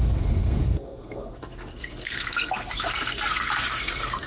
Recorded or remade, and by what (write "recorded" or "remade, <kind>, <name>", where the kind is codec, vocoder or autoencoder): remade, codec, SNAC